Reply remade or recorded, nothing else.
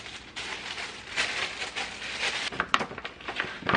recorded